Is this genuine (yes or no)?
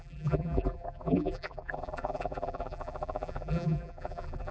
no